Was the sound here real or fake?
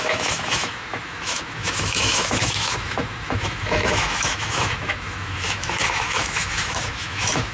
fake